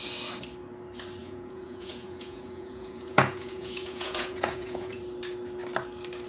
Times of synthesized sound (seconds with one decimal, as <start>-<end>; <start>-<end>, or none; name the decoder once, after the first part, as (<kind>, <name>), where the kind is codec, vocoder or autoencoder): 1.2-5.0 (vocoder, Vocos)